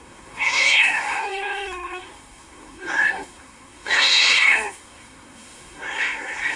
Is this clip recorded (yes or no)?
no